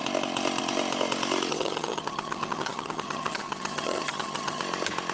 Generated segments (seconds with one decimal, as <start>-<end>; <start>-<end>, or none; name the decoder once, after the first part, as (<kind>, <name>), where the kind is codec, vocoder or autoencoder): 1.5-4.6 (vocoder, HiFi-GAN)